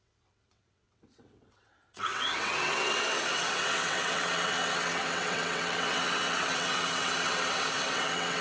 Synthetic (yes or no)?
yes